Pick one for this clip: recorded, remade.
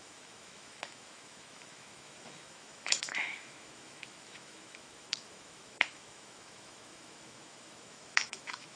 remade